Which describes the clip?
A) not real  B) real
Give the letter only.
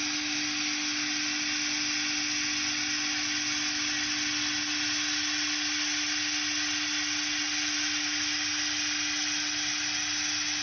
B